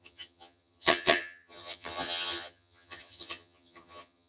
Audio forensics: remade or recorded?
remade